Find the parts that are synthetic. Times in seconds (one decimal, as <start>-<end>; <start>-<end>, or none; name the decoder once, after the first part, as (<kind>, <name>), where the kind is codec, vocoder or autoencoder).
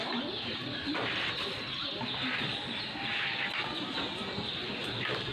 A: 0.0-1.8 (vocoder, BigVGAN v2); 3.0-5.3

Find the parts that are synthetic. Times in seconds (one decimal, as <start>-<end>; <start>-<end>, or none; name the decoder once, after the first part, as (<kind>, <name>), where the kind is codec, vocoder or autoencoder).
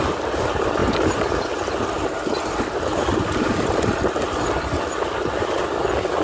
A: none